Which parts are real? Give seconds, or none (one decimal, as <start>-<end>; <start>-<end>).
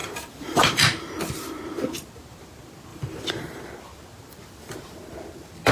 0.8-2.9; 3.6-5.7